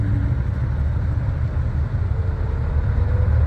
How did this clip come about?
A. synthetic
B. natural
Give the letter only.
B